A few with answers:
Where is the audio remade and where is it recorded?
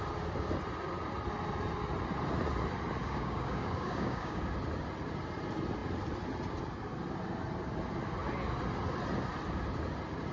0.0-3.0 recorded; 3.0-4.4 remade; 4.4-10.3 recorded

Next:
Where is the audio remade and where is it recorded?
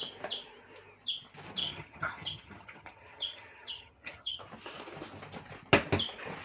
0.0-1.6 recorded; 1.6-4.4 remade; 4.4-6.4 recorded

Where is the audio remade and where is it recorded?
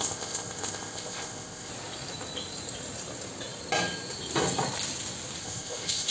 0.0-1.7 remade; 1.7-5.4 recorded; 5.4-6.1 remade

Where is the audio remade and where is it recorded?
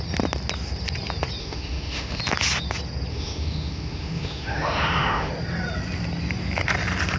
0.0-1.4 recorded; 1.4-2.2 remade; 2.2-3.1 recorded; 3.1-5.3 remade; 5.3-7.2 recorded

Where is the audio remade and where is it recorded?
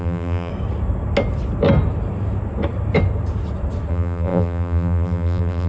0.0-0.5 remade; 0.5-3.9 recorded; 3.9-5.7 remade